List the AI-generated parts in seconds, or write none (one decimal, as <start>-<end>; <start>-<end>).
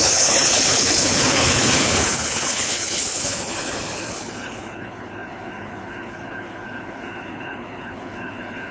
0.0-8.7